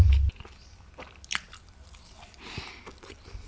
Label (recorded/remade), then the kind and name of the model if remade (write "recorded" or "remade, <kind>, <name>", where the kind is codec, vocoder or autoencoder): recorded